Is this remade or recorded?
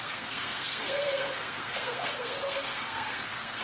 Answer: remade